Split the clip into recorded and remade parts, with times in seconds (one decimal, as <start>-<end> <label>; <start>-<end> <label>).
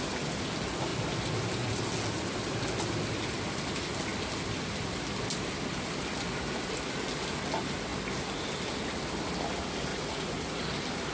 0.0-9.9 recorded; 9.9-10.6 remade; 10.6-11.1 recorded